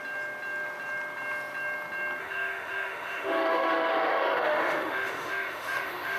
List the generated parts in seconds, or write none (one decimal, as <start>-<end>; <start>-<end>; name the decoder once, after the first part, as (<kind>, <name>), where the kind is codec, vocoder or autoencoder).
2.2-6.2 (autoencoder, DAC-VAE)